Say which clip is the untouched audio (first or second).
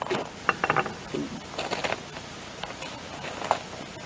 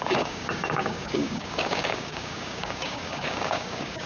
first